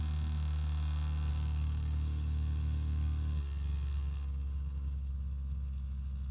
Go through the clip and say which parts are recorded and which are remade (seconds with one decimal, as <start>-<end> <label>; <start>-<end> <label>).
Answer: 0.0-1.3 recorded; 1.3-5.1 remade; 5.1-6.3 recorded